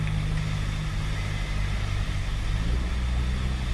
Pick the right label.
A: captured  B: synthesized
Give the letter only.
A